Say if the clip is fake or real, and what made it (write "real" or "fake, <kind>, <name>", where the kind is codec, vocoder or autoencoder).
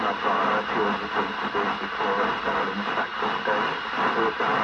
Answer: real